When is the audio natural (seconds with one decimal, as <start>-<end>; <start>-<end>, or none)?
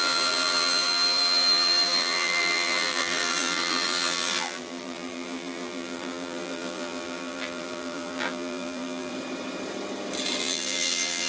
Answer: 9.1-10.4